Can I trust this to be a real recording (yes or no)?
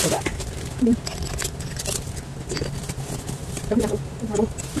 yes